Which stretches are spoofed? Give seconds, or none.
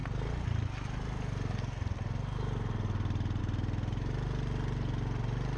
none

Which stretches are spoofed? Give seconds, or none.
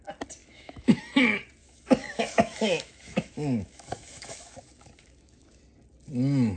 0.4-1.0; 1.6-5.6